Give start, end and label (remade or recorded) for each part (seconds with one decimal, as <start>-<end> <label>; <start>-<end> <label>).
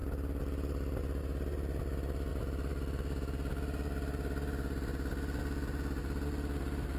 0.0-7.0 recorded